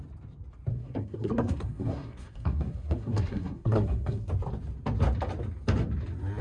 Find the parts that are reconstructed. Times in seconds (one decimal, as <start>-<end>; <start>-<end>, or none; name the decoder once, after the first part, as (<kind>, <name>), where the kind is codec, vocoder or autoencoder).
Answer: 0.7-4.3 (codec, SNAC)